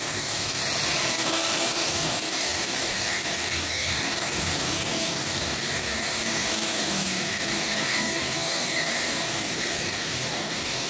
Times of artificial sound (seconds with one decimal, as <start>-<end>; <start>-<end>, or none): 0.0-0.6; 1.1-10.9